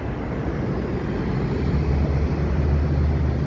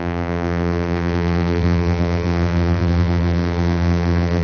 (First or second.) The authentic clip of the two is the first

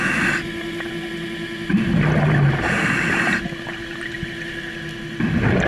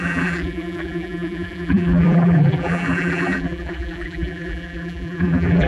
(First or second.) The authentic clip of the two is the first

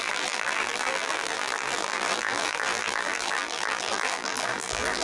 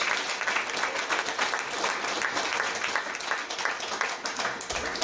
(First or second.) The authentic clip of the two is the second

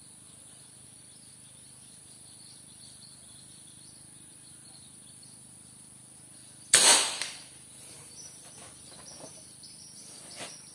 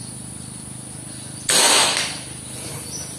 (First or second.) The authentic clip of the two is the second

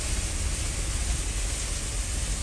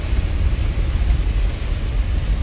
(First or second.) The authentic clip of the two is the first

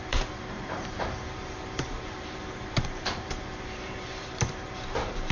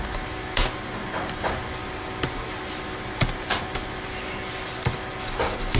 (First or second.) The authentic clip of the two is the second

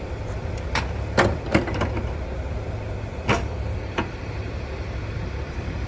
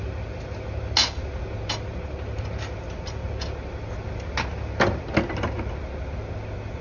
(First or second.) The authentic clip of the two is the second